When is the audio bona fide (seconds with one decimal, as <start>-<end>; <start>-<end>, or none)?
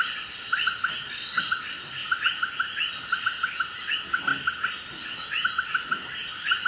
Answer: 0.0-6.7